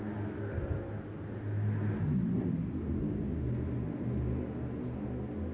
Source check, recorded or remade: recorded